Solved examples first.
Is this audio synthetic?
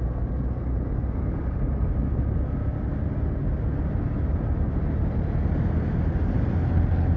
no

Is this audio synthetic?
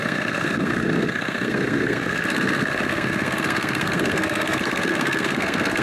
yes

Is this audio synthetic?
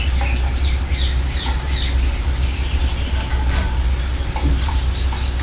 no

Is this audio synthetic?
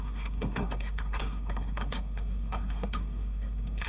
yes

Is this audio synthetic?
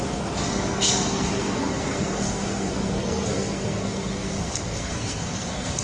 yes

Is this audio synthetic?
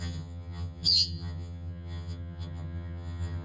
yes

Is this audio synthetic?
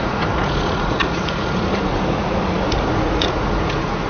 yes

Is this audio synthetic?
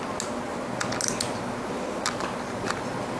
no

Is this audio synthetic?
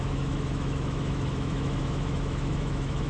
yes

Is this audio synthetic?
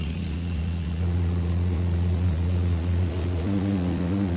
yes